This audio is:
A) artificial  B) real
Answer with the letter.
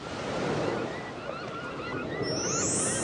B